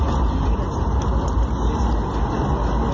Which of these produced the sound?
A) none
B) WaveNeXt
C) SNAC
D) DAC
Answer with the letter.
A